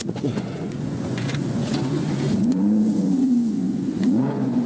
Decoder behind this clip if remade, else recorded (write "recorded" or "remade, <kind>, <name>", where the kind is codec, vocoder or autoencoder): remade, vocoder, Vocos